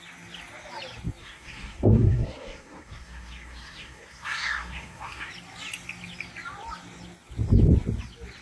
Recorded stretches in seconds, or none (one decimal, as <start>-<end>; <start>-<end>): 0.0-1.2; 5.3-8.4